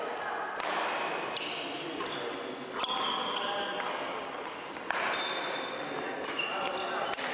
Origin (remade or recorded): recorded